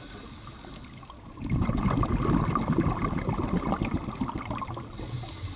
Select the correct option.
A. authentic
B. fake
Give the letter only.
A